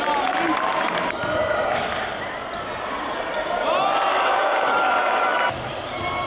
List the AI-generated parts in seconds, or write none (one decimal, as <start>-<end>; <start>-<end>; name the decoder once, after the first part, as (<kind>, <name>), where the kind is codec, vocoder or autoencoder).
4.1-4.9 (codec, DAC)